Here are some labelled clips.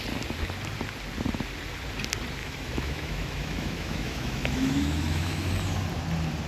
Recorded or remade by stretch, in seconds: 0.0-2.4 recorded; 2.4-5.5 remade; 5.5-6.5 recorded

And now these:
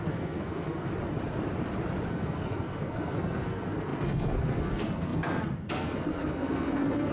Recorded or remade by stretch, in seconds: 0.0-0.9 remade; 0.9-2.1 recorded; 2.1-7.1 remade

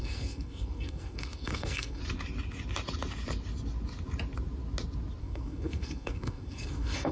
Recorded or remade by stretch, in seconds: 0.0-2.0 remade; 2.0-5.2 recorded; 5.2-7.1 remade

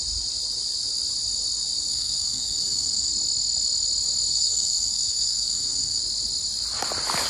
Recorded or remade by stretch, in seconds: 0.0-1.9 recorded; 1.9-3.1 remade; 3.1-4.3 recorded; 4.3-6.0 remade; 6.0-7.3 recorded